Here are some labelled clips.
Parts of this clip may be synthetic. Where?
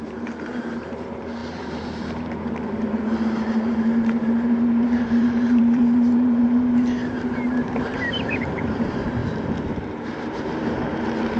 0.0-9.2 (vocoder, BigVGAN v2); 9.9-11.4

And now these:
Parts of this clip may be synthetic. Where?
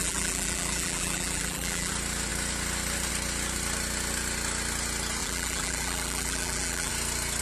0.0-1.9 (vocoder, BigVGAN v2); 5.2-6.9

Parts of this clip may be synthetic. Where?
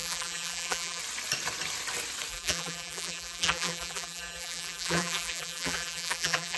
0.0-1.0 (vocoder, BigVGAN v2); 2.3-6.6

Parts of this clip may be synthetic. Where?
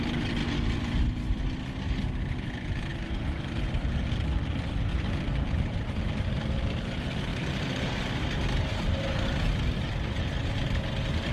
2.9-4.1 (vocoder, BigVGAN v2); 4.9-6.0; 7.3-9.0